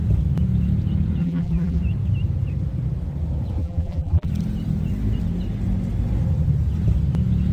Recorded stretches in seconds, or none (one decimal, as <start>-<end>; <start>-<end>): 0.0-1.2; 1.8-3.6; 4.3-7.5